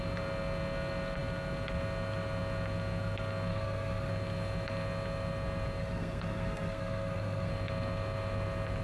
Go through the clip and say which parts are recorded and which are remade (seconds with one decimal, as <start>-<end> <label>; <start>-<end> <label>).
0.0-3.5 recorded; 3.5-4.1 remade; 4.1-5.8 recorded; 5.8-7.5 remade; 7.5-8.8 recorded